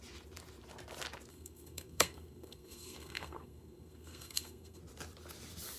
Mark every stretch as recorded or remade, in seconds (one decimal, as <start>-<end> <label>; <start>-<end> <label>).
0.0-1.3 recorded; 1.3-4.8 remade; 4.8-5.8 recorded